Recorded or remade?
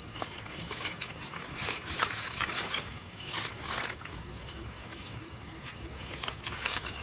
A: remade